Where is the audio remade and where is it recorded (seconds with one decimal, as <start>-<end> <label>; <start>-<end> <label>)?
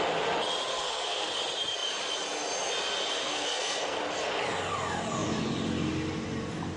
0.0-0.7 recorded; 0.7-1.4 remade; 1.4-3.2 recorded; 3.2-4.0 remade; 4.0-6.8 recorded